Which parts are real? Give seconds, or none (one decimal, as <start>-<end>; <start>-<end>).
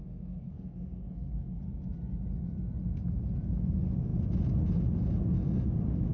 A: 1.5-6.1